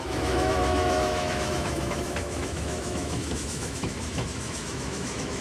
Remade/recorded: remade